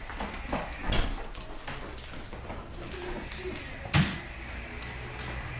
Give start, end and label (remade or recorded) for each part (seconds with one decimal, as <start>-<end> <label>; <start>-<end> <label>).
0.0-5.6 recorded